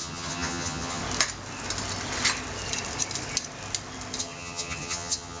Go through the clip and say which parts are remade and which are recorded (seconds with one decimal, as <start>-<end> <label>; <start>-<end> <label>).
0.0-1.0 remade; 1.0-4.2 recorded; 4.2-5.4 remade